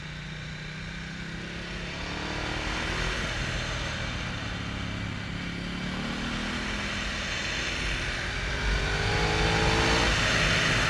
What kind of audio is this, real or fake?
real